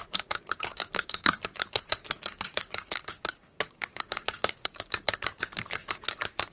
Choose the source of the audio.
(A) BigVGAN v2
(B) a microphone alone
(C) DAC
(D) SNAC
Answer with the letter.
C